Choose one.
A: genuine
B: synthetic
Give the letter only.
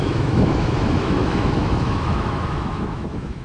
B